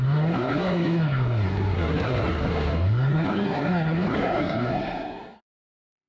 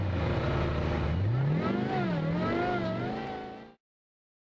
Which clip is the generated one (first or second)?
first